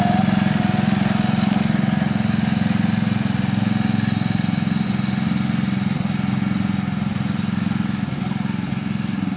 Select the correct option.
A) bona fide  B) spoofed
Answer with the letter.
A